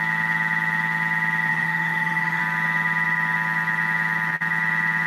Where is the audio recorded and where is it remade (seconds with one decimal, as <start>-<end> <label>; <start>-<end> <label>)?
0.0-1.5 recorded; 1.5-2.4 remade; 2.4-5.1 recorded